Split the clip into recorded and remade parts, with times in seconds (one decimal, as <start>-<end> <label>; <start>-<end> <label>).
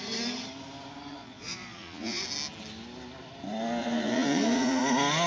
0.0-1.1 recorded; 1.1-2.2 remade; 2.2-3.8 recorded; 3.8-4.8 remade; 4.8-5.3 recorded